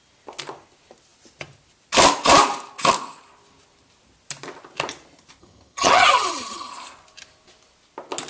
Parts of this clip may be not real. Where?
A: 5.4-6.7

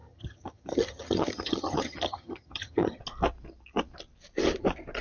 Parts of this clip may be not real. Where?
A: 0.0-3.0